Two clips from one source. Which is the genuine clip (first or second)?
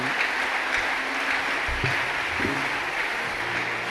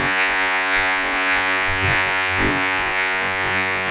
first